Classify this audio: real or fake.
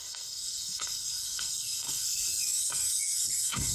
fake